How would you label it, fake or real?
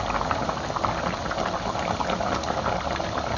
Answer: real